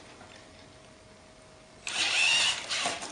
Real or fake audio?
real